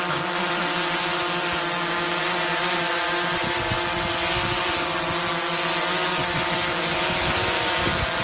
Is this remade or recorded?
recorded